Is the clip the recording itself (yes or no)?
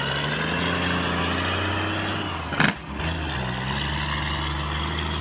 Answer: yes